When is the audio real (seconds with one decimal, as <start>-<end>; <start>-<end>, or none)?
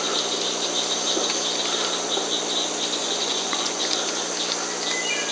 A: 0.0-3.0; 3.8-5.3